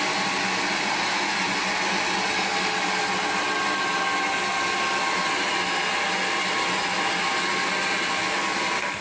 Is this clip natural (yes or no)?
yes